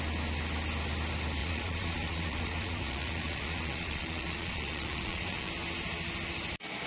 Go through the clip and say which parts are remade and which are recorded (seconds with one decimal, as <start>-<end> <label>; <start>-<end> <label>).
0.0-1.4 recorded; 1.4-5.5 remade; 5.5-6.9 recorded